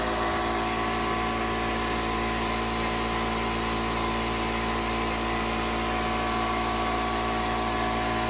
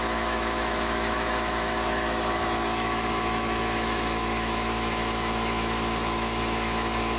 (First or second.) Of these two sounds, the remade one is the second